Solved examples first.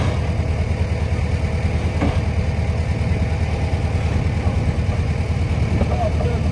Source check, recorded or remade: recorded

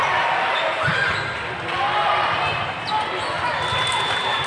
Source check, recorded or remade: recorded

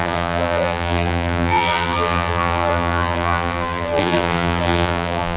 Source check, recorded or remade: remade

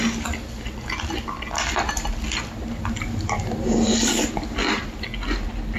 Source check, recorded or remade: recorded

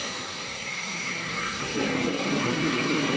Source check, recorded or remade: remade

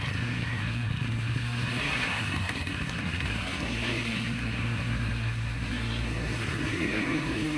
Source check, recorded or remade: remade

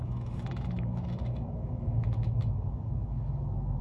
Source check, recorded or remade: remade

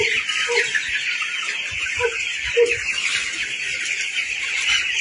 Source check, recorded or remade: recorded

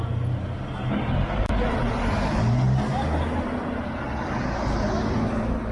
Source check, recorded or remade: recorded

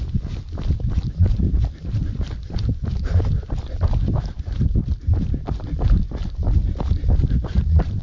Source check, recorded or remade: recorded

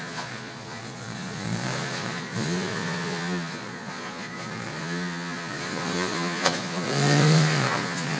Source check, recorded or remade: remade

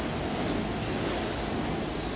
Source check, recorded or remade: recorded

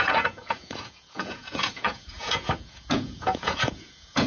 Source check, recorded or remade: remade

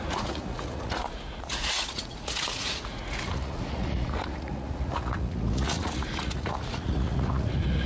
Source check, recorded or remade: remade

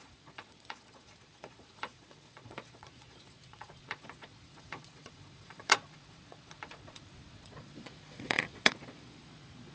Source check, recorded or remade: remade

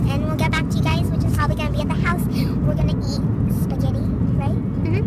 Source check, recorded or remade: recorded